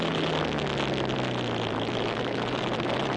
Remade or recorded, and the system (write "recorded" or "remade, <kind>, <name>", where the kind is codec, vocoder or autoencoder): recorded